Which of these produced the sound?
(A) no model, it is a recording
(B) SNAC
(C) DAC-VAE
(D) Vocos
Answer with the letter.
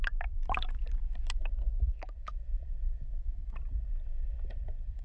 A